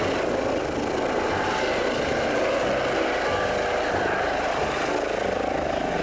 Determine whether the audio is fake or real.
real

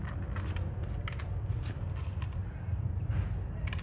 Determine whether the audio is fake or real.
real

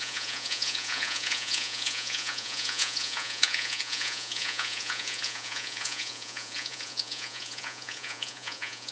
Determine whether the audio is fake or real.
fake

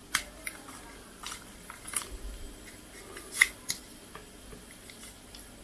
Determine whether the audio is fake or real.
real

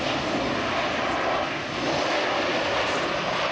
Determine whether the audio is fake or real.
real